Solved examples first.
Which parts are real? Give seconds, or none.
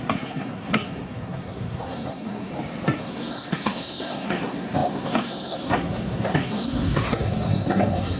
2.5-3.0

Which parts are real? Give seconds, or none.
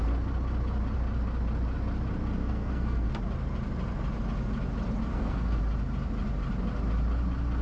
0.0-2.4; 3.1-5.1; 5.6-7.6